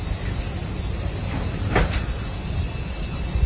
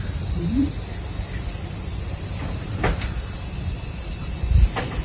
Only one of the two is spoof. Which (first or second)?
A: second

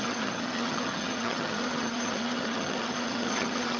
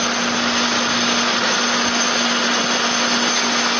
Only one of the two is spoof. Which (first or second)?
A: first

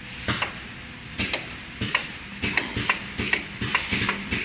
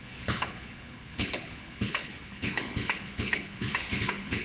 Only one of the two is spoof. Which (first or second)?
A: second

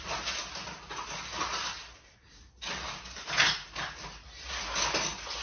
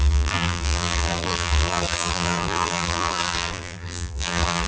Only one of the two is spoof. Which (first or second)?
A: second